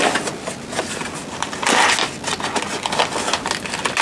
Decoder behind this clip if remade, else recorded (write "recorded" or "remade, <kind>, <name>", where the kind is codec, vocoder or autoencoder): recorded